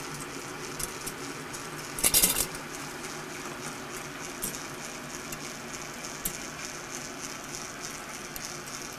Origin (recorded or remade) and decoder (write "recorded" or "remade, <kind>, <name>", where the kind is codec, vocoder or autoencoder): recorded